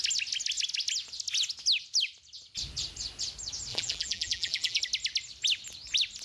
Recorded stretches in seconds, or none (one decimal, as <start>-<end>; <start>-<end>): 0.0-3.7; 4.8-6.2

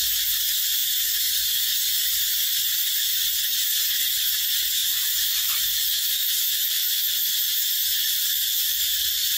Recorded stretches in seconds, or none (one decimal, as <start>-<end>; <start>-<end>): 0.0-4.8; 8.8-9.4

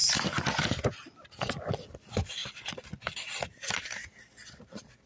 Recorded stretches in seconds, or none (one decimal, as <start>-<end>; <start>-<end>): 0.0-5.1